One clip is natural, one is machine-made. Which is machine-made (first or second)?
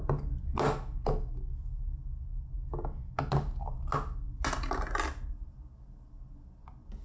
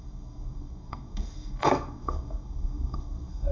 second